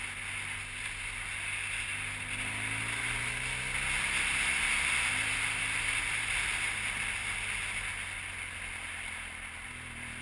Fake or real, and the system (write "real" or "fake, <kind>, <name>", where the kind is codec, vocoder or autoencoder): real